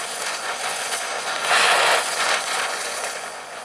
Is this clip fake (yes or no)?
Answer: yes